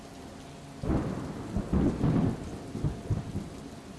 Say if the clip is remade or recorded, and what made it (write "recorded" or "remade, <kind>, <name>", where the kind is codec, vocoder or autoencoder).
recorded